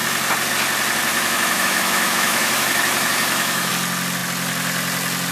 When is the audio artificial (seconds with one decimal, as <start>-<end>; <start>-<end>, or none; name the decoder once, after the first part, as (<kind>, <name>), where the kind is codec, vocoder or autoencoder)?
1.1-3.7 (autoencoder, DAC-VAE)